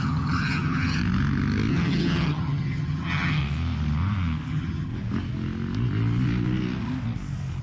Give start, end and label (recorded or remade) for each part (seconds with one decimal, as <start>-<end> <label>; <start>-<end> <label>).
0.0-1.0 remade; 1.0-1.7 recorded; 1.7-3.4 remade; 3.4-4.5 recorded; 4.5-4.9 remade; 4.9-7.6 recorded